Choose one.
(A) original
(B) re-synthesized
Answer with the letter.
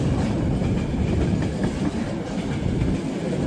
A